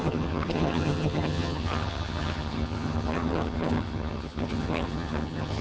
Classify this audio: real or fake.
fake